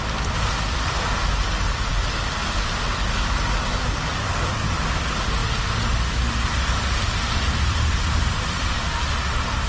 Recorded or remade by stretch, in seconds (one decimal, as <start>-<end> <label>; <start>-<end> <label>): 0.0-9.7 recorded